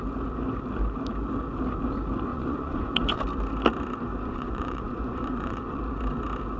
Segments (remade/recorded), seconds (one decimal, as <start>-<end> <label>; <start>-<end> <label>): 0.0-2.3 recorded; 2.3-3.2 remade; 3.2-4.1 recorded; 4.1-5.8 remade; 5.8-6.6 recorded